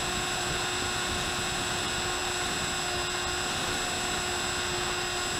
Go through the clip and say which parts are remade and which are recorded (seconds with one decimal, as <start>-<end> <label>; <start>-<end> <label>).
0.0-5.4 recorded